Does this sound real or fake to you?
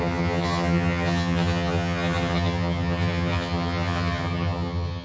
fake